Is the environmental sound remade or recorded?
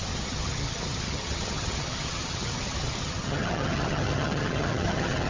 remade